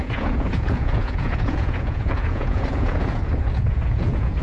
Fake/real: fake